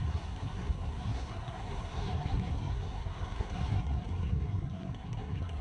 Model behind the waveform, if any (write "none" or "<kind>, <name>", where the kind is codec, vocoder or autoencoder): codec, SNAC